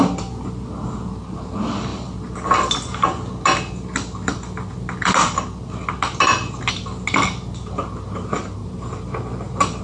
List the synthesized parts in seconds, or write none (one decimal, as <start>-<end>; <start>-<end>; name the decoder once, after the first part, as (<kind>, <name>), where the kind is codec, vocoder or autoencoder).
8.6-9.8 (vocoder, BigVGAN v2)